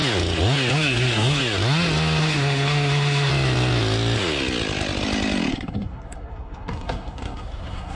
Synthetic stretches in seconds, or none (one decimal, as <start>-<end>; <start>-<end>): 0.7-1.4; 2.2-3.3; 5.5-7.9